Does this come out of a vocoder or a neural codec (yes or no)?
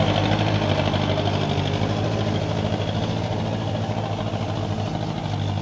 no